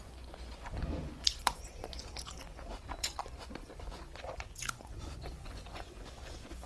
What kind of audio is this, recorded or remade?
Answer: remade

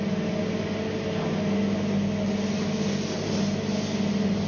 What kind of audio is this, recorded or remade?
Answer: recorded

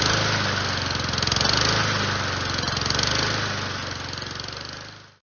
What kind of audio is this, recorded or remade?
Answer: recorded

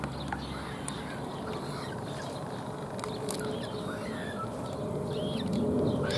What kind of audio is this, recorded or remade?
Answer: recorded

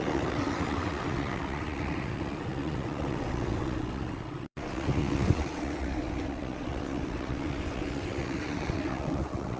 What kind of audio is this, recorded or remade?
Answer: remade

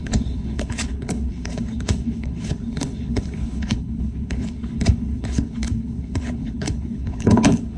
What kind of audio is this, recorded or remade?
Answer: remade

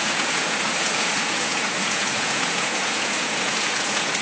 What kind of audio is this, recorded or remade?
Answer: remade